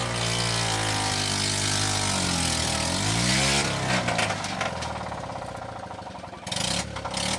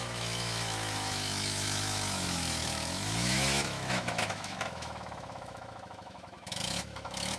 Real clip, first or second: first